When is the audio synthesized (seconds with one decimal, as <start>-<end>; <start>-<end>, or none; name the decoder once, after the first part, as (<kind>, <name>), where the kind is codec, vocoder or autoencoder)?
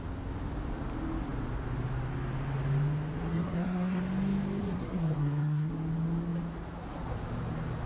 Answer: 3.2-4.0 (codec, SNAC); 4.6-5.7